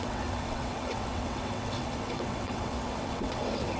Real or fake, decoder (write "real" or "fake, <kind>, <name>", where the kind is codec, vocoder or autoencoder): fake, vocoder, WaveNeXt